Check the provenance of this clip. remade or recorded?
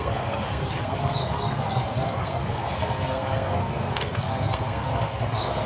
remade